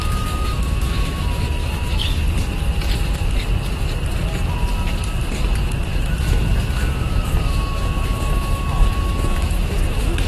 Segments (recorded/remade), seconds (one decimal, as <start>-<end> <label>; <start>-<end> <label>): 0.0-2.0 remade; 2.0-5.6 recorded; 5.6-10.3 remade